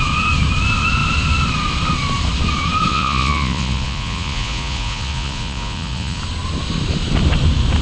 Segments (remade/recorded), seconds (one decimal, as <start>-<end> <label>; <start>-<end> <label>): 0.0-2.9 recorded; 2.9-6.2 remade; 6.2-7.8 recorded